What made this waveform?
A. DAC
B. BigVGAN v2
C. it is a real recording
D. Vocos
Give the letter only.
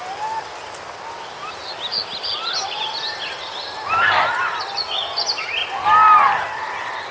C